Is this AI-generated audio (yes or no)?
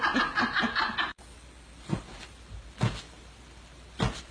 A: no